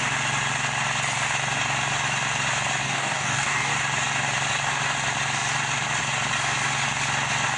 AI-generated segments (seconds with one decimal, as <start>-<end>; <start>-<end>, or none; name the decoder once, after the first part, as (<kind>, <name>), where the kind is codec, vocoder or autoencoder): 2.8-3.7 (codec, DAC)